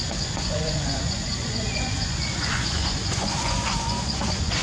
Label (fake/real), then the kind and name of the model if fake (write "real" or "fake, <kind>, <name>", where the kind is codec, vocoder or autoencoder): fake, vocoder, Vocos